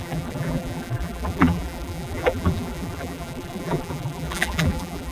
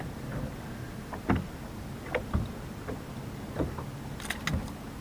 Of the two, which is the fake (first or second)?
first